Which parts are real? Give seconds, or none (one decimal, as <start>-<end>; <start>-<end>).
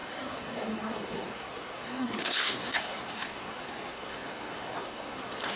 none